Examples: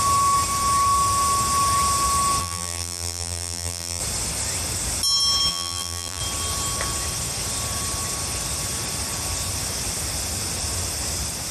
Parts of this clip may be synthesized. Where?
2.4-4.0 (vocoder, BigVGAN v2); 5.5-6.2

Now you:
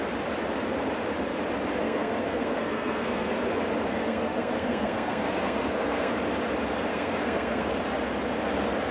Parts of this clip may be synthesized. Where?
1.8-3.3 (codec, SNAC); 3.9-6.1; 6.9-7.7

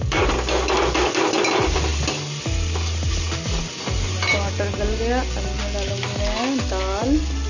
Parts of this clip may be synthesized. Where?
none

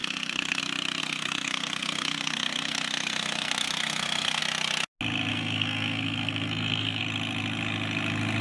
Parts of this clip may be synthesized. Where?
0.0-0.6 (codec, SNAC); 1.0-4.4; 5.3-7.0

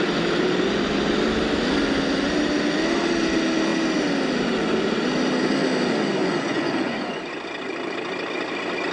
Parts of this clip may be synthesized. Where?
6.2-7.2 (vocoder, Vocos)